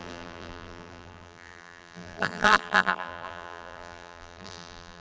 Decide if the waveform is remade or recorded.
remade